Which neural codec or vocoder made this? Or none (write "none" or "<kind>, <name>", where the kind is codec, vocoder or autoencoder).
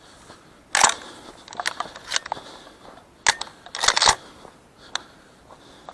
none